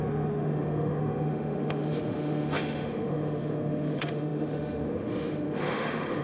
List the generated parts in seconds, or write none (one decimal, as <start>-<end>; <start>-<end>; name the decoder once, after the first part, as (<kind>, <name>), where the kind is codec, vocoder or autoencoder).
0.0-6.2 (autoencoder, DAC-VAE)